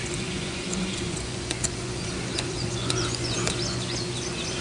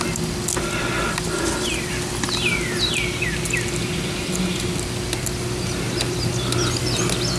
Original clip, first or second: second